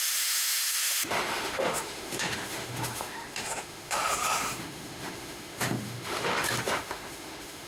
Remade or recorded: remade